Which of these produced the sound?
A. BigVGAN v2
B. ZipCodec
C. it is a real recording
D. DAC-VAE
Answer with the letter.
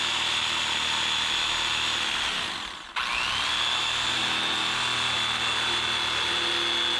C